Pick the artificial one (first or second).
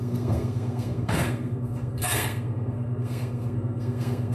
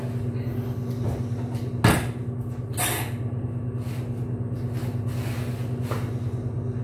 first